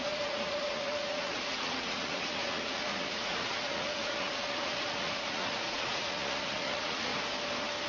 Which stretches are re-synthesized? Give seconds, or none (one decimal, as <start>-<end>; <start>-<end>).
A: 0.0-7.1